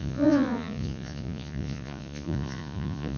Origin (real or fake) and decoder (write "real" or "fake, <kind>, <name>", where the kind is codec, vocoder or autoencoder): fake, vocoder, Vocos